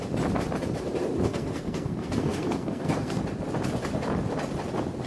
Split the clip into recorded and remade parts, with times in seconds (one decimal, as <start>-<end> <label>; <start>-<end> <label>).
0.0-1.3 recorded; 1.3-3.2 remade; 3.2-5.1 recorded